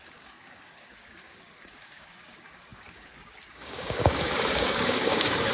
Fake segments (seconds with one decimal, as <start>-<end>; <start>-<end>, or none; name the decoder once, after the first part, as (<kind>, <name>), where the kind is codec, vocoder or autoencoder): 0.0-5.5 (codec, DAC)